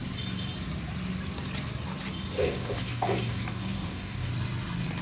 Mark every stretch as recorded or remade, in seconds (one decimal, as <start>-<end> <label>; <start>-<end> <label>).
0.0-2.4 recorded; 2.4-4.3 remade; 4.3-5.0 recorded